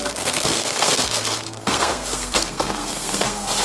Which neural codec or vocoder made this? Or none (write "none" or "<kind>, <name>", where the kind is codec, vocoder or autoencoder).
codec, SNAC